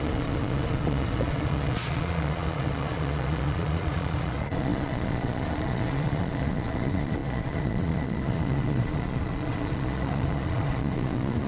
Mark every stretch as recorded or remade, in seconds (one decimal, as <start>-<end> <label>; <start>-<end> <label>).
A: 0.0-11.5 remade